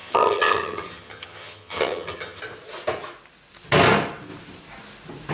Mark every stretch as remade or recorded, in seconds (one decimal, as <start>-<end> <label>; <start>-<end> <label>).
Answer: 0.0-2.4 remade; 2.4-5.3 recorded

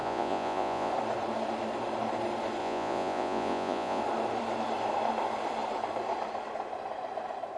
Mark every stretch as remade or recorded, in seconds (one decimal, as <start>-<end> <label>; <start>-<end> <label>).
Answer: 0.0-0.9 remade; 0.9-2.6 recorded; 2.6-4.0 remade; 4.0-7.6 recorded

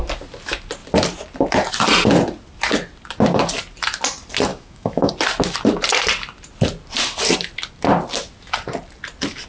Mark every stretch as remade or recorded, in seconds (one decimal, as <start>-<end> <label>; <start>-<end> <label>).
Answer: 0.0-4.5 recorded; 4.5-5.1 remade; 5.1-9.5 recorded

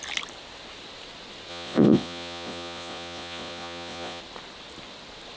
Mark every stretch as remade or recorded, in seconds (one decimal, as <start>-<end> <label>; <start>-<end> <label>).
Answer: 0.0-1.5 recorded; 1.5-4.2 remade; 4.2-5.4 recorded

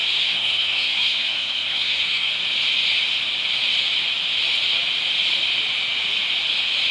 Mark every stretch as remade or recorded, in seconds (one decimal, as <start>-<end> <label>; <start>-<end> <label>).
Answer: 0.0-2.3 remade; 2.3-6.9 recorded

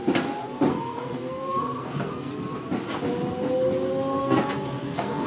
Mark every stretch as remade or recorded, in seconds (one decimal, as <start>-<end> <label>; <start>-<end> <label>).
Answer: 0.0-0.4 recorded; 0.4-2.3 remade; 2.3-4.2 recorded; 4.2-5.3 remade

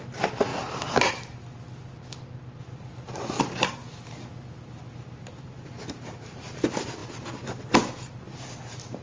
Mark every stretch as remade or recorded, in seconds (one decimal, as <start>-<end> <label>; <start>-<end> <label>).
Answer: 0.0-0.5 recorded; 0.5-1.1 remade; 1.1-5.5 recorded; 5.5-6.5 remade; 6.5-9.0 recorded

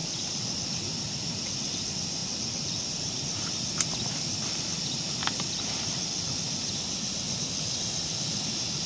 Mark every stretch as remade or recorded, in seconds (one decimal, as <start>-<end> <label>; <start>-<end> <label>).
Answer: 0.0-8.9 recorded